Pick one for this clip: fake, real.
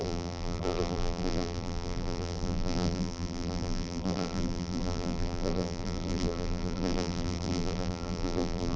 fake